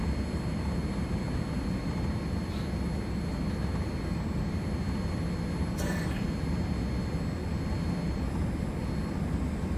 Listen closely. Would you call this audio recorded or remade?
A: recorded